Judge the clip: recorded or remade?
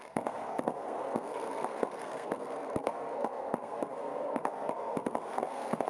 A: remade